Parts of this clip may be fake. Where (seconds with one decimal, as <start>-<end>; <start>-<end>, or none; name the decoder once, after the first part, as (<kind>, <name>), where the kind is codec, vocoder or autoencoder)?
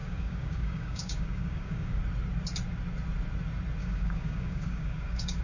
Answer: 0.0-2.0 (codec, DAC); 3.8-5.4